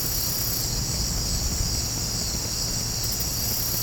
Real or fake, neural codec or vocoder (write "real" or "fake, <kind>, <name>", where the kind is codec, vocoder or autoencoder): real